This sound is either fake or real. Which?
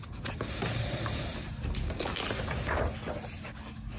real